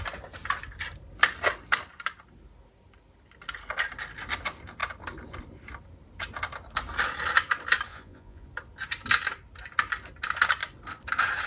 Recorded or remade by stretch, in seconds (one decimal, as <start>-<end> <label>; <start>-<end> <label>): 0.0-7.9 recorded; 7.9-8.5 remade; 8.5-11.5 recorded